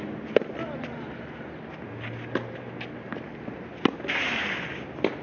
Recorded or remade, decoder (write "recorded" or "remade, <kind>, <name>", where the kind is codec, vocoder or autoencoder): recorded